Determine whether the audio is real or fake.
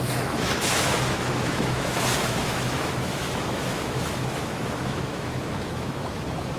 fake